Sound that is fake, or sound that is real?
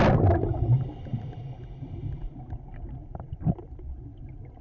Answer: real